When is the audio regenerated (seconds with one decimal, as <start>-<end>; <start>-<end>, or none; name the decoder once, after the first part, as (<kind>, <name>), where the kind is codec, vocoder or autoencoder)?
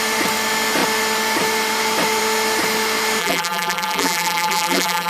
3.2-5.1 (vocoder, BigVGAN v2)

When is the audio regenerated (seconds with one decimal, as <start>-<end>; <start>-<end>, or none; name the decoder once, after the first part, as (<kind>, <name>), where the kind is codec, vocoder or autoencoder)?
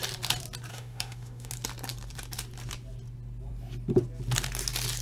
0.7-1.5 (autoencoder, DAC-VAE)